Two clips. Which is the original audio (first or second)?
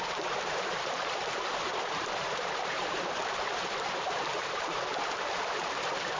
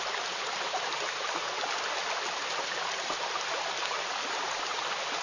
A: second